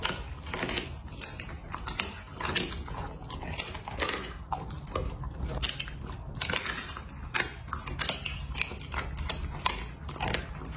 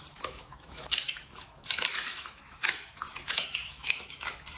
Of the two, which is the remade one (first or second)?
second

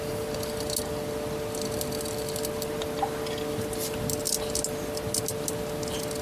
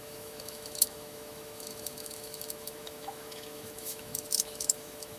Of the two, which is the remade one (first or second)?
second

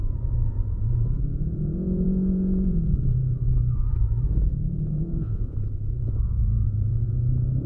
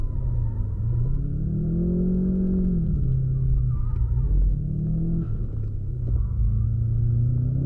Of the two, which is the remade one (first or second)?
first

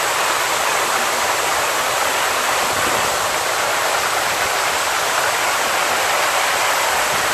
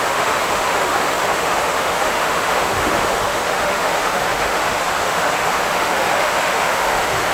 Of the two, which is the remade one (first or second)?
second